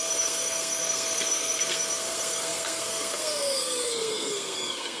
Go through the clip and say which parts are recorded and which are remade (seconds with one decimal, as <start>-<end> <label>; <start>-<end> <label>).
0.0-5.0 remade